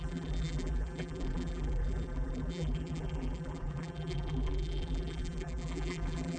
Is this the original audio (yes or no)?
no